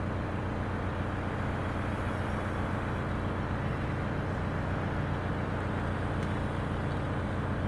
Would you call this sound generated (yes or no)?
no